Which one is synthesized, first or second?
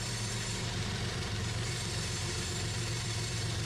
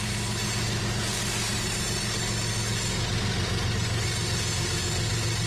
first